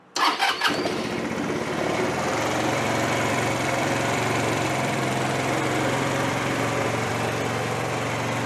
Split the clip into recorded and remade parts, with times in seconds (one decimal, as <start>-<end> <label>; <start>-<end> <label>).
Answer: 0.0-2.3 recorded; 2.3-7.1 remade; 7.1-8.5 recorded